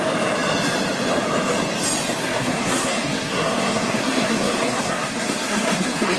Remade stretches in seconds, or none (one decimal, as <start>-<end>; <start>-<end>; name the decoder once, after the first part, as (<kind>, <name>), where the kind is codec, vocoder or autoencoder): 2.2-6.2 (codec, SNAC)